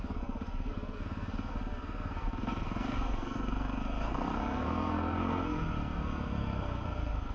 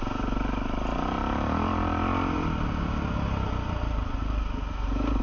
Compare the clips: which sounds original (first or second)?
second